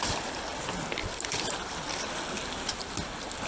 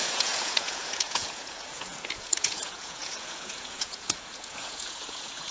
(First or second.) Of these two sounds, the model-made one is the second